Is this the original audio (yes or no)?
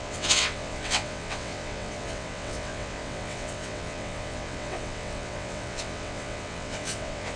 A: no